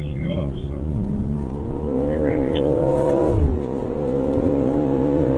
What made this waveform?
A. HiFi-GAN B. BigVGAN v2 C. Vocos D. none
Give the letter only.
C